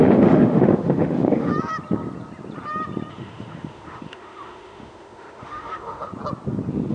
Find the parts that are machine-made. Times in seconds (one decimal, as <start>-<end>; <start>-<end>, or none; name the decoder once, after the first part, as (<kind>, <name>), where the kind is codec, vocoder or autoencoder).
0.0-1.5 (autoencoder, DAC-VAE); 3.1-6.1